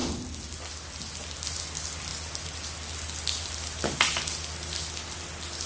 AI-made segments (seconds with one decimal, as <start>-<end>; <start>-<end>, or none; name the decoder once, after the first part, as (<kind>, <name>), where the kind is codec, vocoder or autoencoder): none